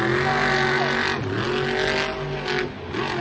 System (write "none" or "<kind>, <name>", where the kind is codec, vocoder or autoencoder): none